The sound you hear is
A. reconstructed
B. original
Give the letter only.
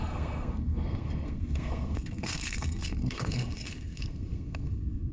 A